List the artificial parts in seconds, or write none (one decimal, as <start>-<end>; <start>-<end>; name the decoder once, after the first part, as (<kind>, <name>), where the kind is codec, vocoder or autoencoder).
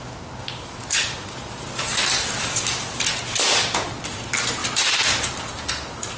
none